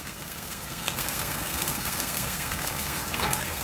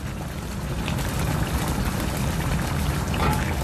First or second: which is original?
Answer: second